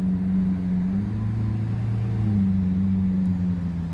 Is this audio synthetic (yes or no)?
no